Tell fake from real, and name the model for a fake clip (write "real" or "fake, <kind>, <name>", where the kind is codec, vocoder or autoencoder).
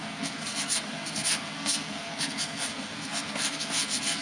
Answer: fake, codec, SNAC